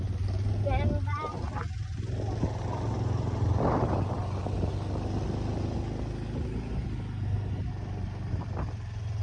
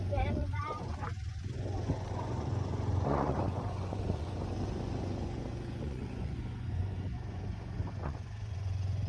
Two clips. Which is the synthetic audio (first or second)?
second